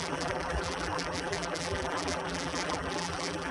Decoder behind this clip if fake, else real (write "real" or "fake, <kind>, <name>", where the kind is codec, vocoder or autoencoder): fake, vocoder, BigVGAN v2